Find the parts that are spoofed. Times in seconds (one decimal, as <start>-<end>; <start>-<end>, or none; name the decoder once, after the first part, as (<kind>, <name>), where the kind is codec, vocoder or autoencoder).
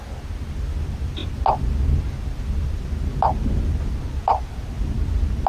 none